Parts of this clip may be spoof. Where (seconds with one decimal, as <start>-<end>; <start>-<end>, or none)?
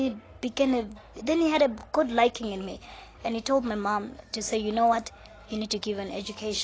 none